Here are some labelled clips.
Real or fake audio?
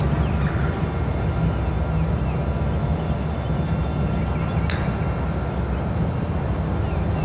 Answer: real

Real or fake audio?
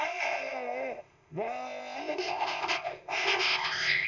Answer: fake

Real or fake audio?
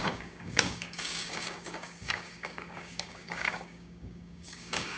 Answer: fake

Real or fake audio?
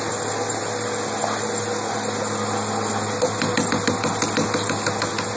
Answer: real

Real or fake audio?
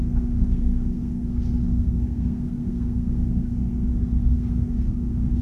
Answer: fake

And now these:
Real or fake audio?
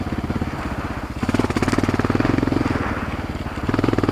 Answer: real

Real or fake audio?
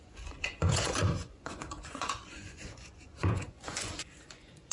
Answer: fake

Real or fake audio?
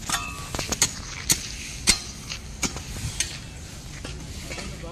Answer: real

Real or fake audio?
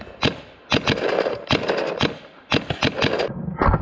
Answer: real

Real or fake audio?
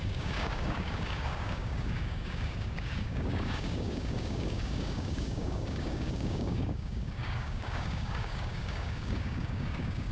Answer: fake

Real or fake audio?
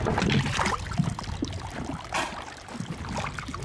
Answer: real